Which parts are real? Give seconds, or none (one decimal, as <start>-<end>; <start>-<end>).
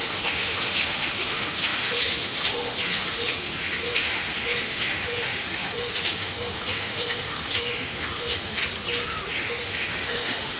8.6-9.3